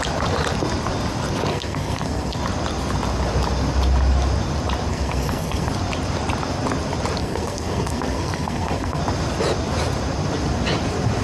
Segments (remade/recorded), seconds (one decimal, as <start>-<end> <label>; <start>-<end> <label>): 0.0-1.5 recorded; 1.5-2.4 remade; 2.4-4.9 recorded; 4.9-5.7 remade; 5.7-7.2 recorded; 7.2-9.0 remade; 9.0-11.2 recorded